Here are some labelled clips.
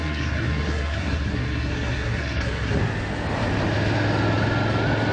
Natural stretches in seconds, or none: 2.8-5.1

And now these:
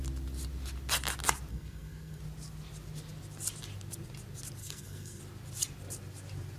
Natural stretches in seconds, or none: 0.0-1.5; 2.2-4.6; 5.2-6.6

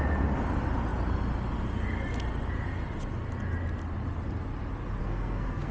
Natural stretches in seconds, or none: 0.0-5.0

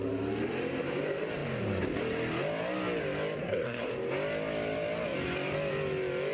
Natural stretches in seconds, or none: 0.0-3.4; 3.9-6.3

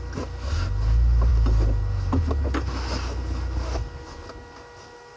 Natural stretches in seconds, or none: 0.0-5.2

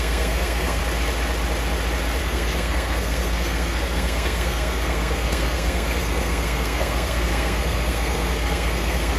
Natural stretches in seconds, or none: 0.8-2.2